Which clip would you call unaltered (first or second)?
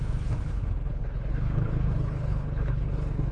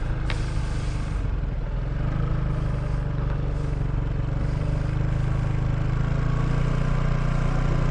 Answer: second